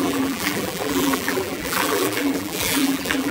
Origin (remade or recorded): remade